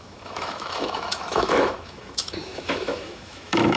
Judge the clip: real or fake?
fake